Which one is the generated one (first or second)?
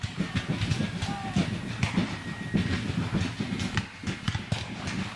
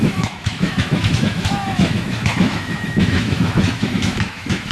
second